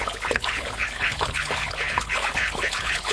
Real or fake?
fake